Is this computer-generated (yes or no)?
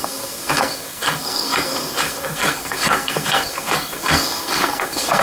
yes